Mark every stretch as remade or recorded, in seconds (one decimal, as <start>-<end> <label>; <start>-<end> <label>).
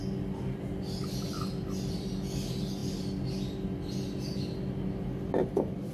0.0-1.6 recorded; 1.6-2.8 remade; 2.8-5.3 recorded; 5.3-5.9 remade